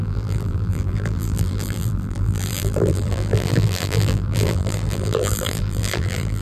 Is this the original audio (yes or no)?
no